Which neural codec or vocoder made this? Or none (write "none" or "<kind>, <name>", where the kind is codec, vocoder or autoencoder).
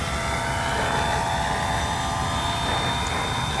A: none